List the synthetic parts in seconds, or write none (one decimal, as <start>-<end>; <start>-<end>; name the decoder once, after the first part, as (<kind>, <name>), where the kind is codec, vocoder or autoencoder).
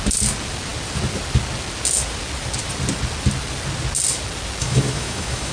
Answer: 4.6-5.5 (autoencoder, DAC-VAE)